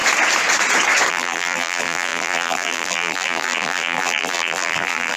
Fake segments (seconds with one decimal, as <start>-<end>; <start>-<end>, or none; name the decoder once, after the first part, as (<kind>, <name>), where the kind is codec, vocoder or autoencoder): 1.1-5.2 (vocoder, BigVGAN v2)